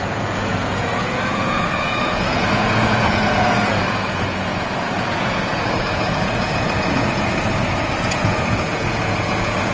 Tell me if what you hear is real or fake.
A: fake